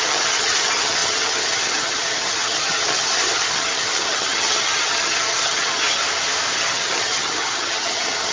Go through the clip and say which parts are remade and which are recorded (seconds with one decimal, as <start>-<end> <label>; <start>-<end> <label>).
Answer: 0.0-6.0 remade; 6.0-6.6 recorded; 6.6-8.3 remade